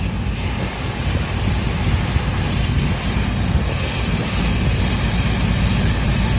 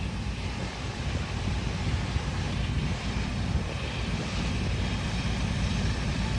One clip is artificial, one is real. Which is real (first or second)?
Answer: first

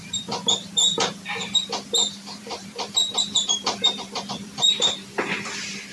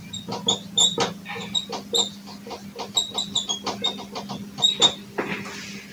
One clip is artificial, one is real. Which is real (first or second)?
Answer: second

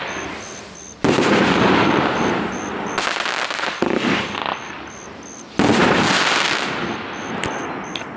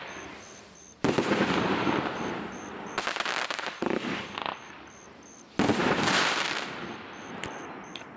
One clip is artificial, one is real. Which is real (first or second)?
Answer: first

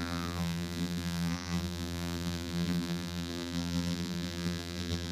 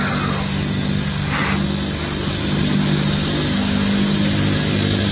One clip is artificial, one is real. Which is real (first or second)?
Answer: second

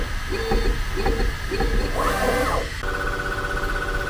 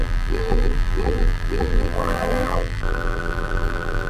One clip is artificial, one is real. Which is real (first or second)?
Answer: first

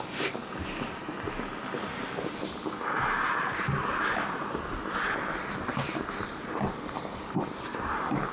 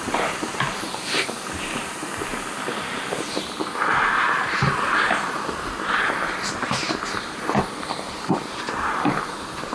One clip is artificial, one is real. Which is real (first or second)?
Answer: first